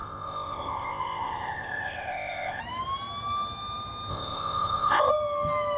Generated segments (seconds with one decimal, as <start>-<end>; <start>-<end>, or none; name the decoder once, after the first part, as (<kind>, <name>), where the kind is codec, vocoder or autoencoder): 0.0-2.6 (codec, ZipCodec); 4.1-5.1